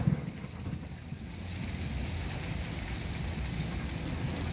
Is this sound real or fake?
real